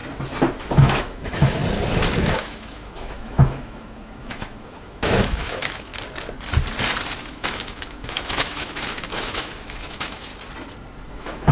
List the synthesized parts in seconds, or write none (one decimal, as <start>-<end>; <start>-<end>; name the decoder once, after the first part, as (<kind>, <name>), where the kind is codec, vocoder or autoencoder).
0.8-1.6 (autoencoder, DAC-VAE); 2.2-5.9; 7.2-10.3; 11.1-11.5